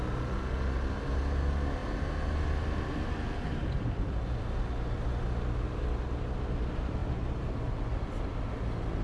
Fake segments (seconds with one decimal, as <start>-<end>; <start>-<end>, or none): none